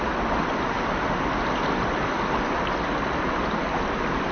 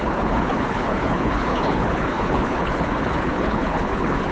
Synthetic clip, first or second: second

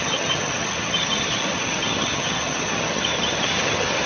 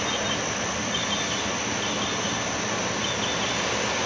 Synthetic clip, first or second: first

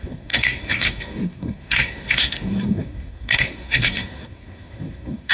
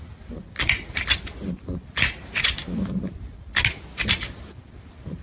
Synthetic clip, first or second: first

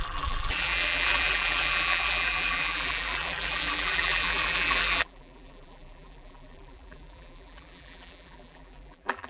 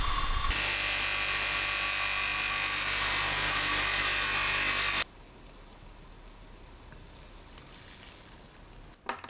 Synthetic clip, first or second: first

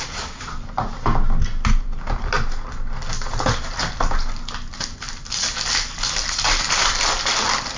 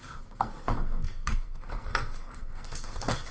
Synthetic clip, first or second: second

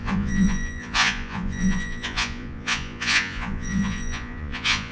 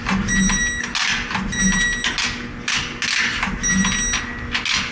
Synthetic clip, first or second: first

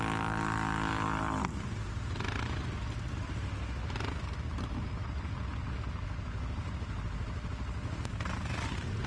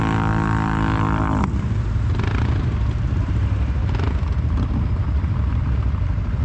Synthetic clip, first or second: second